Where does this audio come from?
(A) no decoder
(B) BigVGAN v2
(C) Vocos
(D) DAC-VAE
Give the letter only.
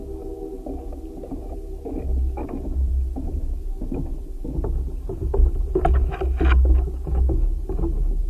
A